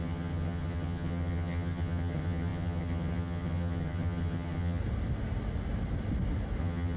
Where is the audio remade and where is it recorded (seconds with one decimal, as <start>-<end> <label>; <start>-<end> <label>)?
0.0-4.8 remade; 4.8-6.6 recorded; 6.6-7.0 remade